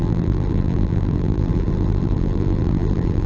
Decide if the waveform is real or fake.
fake